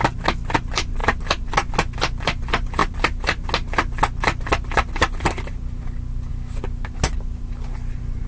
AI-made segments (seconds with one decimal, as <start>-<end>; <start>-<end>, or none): none